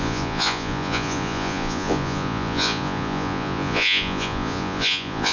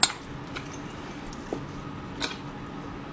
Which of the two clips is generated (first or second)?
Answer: first